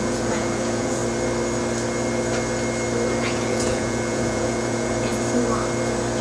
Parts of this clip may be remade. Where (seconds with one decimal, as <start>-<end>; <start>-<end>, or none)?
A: 0.0-1.0; 3.2-5.1